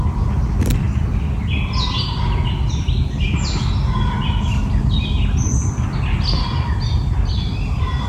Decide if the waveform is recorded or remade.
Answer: recorded